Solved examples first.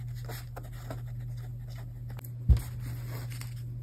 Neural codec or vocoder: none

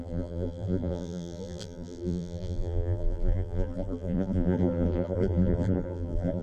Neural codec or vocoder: vocoder, BigVGAN v2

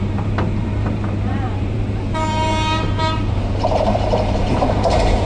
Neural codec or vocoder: vocoder, BigVGAN v2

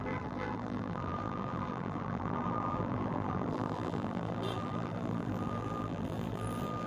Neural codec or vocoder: vocoder, BigVGAN v2